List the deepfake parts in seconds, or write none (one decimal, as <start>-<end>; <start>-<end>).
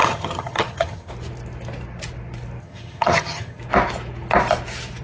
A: 0.0-1.1; 2.6-3.6